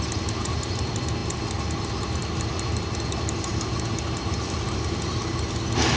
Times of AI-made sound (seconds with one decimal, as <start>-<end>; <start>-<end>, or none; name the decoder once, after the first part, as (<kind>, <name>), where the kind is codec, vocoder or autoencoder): none